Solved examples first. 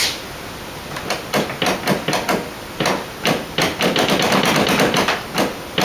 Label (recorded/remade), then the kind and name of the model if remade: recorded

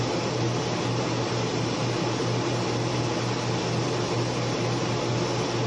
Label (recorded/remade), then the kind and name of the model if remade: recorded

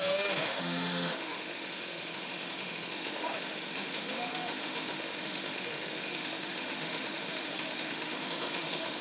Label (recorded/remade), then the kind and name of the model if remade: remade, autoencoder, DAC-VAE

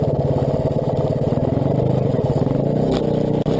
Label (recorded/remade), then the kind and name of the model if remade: recorded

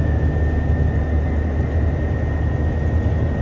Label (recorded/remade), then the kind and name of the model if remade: recorded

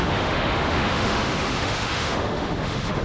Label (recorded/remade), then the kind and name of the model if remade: remade, autoencoder, DAC-VAE